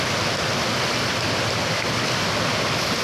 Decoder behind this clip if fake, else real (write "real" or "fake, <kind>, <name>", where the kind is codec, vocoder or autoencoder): real